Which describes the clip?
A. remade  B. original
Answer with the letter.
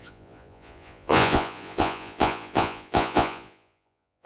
A